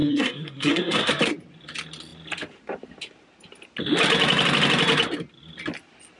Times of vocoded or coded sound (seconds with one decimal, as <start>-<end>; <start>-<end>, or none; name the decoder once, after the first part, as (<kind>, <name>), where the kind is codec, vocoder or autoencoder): 0.0-1.1 (codec, SNAC)